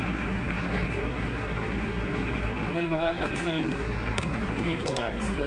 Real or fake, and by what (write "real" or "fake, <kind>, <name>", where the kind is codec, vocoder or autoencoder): fake, codec, SNAC